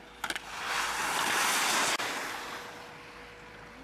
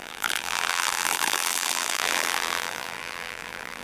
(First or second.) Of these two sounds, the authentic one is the first